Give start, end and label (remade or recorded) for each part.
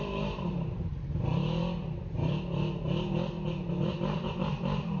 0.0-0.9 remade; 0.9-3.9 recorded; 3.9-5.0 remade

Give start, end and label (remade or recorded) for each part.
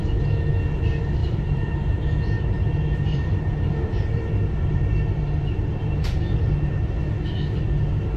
0.0-1.2 recorded; 1.2-5.2 remade; 5.2-5.8 recorded; 5.8-6.5 remade; 6.5-8.2 recorded